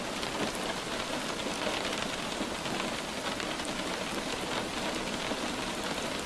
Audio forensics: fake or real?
real